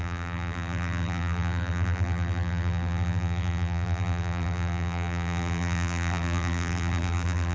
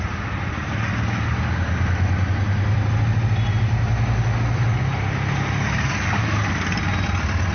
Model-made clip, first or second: first